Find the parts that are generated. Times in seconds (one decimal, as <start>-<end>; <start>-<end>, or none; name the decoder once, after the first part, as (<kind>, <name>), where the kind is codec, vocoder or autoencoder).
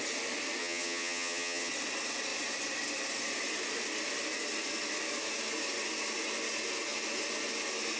0.6-1.7 (vocoder, HiFi-GAN)